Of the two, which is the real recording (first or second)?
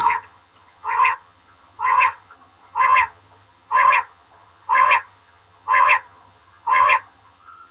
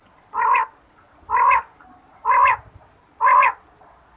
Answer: second